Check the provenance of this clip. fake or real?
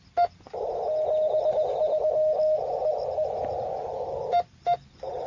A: real